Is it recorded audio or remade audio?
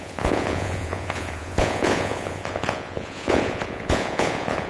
remade